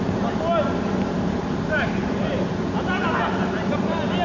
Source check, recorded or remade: recorded